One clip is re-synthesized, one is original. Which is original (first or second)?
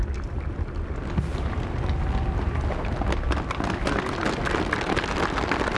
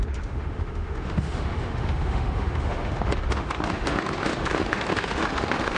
first